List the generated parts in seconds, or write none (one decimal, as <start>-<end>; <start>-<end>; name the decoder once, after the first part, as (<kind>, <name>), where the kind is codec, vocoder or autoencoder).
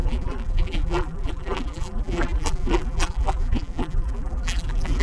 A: 0.0-5.0 (vocoder, BigVGAN v2)